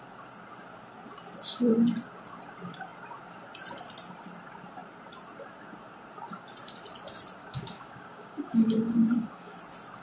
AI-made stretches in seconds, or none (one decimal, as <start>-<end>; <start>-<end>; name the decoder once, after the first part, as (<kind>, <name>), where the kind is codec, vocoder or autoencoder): 7.4-9.6 (codec, DAC)